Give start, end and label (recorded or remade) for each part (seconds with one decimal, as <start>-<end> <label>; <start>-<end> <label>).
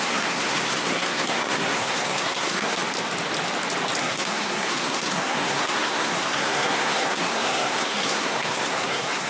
0.0-2.8 remade; 2.8-4.0 recorded; 4.0-9.3 remade